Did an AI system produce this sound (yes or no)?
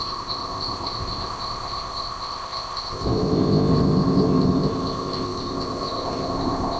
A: yes